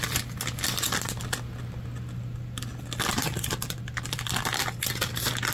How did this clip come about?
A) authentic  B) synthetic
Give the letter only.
A